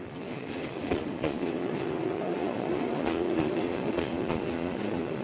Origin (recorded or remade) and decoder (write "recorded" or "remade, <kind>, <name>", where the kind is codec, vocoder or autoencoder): remade, vocoder, Vocos